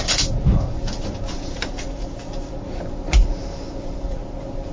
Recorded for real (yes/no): no